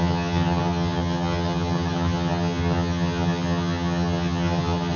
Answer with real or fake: fake